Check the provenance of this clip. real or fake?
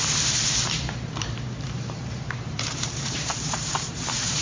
fake